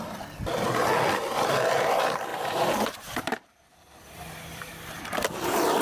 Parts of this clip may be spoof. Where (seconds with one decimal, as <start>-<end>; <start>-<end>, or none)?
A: 2.3-5.0